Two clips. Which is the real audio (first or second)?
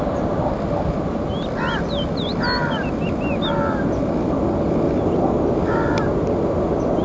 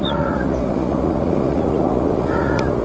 first